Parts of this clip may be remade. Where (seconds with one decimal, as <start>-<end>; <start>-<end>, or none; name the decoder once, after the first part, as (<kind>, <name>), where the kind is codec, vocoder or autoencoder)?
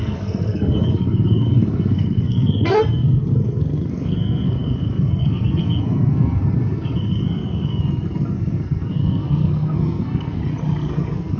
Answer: 0.0-10.4 (codec, SNAC); 10.9-11.4